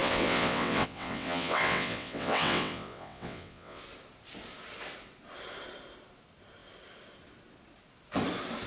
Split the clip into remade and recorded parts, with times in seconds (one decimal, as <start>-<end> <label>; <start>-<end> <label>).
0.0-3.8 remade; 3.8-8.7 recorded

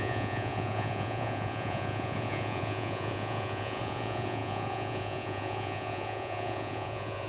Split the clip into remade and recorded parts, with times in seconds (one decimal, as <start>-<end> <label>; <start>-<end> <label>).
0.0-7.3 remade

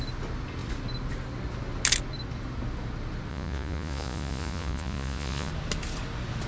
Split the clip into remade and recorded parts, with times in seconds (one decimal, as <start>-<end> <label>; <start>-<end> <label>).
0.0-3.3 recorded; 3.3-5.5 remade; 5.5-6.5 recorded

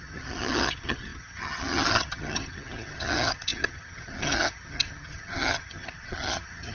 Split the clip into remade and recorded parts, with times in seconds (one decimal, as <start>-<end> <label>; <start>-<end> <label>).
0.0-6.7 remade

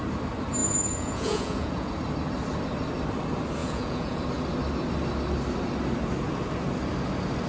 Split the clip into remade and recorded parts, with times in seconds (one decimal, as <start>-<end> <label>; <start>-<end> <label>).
0.0-0.6 recorded; 0.6-1.9 remade; 1.9-3.6 recorded; 3.6-4.2 remade; 4.2-7.5 recorded

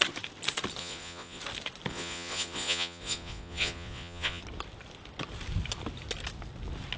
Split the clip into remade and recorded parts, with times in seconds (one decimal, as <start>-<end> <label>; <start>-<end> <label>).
0.0-0.8 recorded; 0.8-1.4 remade; 1.4-1.9 recorded; 1.9-4.4 remade; 4.4-7.0 recorded

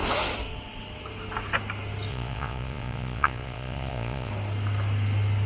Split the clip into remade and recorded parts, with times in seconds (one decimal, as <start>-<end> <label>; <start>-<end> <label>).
0.0-2.1 recorded; 2.1-4.3 remade; 4.3-5.5 recorded